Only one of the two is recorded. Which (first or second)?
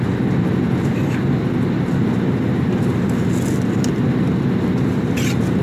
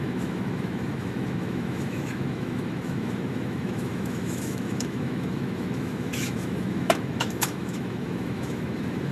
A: first